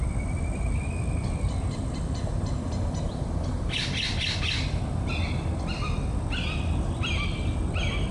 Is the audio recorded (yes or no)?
yes